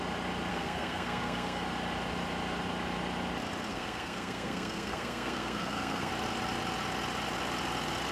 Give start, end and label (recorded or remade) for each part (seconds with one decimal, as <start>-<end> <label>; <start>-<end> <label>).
0.0-0.5 recorded; 0.5-1.6 remade; 1.6-3.7 recorded; 3.7-6.1 remade; 6.1-8.1 recorded